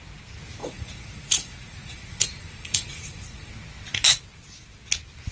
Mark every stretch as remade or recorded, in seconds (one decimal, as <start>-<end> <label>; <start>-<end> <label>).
0.0-0.6 recorded; 0.6-3.5 remade; 3.5-5.3 recorded